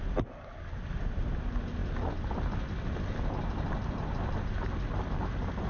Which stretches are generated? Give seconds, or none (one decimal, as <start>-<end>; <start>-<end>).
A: none